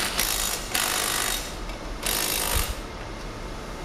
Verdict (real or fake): real